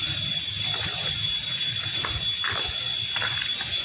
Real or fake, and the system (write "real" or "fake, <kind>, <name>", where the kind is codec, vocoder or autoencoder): real